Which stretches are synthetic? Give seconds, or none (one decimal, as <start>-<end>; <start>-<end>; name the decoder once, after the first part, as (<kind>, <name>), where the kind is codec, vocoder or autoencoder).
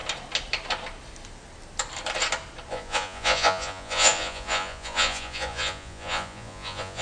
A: 2.7-7.0 (vocoder, Vocos)